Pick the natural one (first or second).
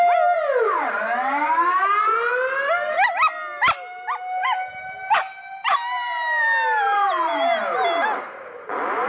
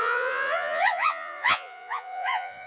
first